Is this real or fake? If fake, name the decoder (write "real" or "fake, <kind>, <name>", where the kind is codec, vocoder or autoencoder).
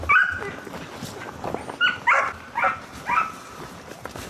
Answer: real